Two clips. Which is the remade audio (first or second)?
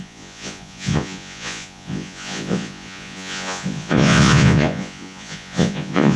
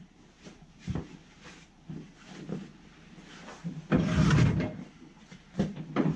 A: first